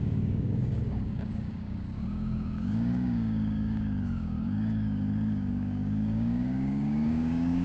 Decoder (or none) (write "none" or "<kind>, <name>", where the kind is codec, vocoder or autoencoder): codec, DAC